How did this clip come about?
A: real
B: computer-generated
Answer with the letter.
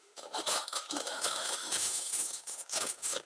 B